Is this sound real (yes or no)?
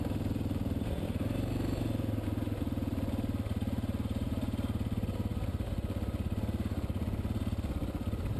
yes